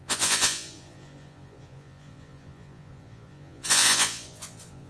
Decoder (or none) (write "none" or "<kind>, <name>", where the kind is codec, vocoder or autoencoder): vocoder, Vocos